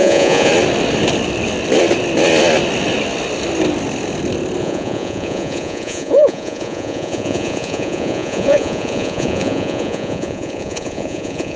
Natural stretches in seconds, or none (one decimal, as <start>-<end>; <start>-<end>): 0.5-4.6